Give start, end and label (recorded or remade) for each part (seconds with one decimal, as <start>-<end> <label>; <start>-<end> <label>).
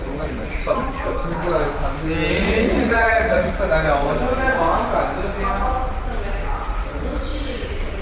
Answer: 0.0-1.2 remade; 1.2-2.3 recorded; 2.3-3.5 remade; 3.5-6.6 recorded; 6.6-7.3 remade; 7.3-8.0 recorded